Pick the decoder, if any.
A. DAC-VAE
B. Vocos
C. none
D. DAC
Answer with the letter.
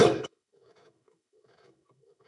A